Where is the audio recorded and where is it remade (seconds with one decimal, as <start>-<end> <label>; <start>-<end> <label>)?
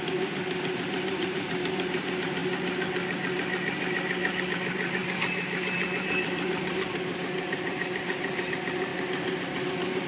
0.0-2.4 remade; 2.4-4.4 recorded; 4.4-8.9 remade; 8.9-9.7 recorded; 9.7-10.1 remade